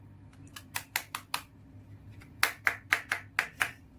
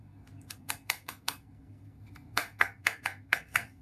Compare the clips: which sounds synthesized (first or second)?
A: second